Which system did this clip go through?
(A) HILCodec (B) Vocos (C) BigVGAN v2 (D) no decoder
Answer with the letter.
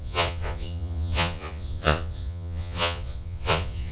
B